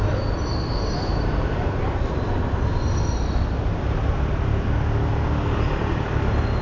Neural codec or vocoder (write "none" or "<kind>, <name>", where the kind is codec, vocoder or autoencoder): none